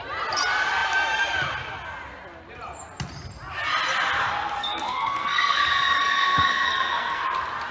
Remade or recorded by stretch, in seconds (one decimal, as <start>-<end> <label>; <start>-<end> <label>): 0.0-4.6 recorded; 4.6-5.6 remade; 5.6-6.0 recorded; 6.0-7.3 remade; 7.3-7.7 recorded